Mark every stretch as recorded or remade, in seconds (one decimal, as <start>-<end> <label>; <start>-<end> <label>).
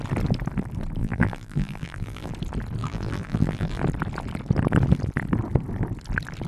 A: 0.0-1.0 recorded; 1.0-2.3 remade; 2.3-2.8 recorded; 2.8-3.8 remade; 3.8-6.5 recorded